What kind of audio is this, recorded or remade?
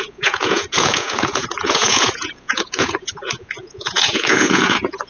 remade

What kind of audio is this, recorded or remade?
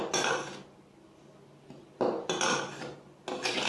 recorded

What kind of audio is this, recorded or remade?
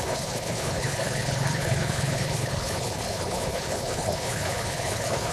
remade